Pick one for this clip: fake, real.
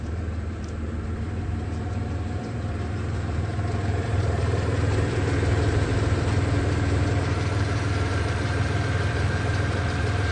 fake